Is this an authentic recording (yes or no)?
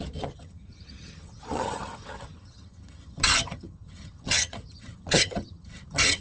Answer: no